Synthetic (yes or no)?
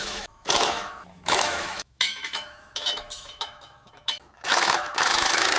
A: yes